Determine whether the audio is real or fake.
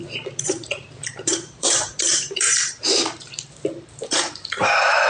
fake